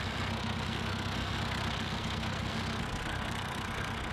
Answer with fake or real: fake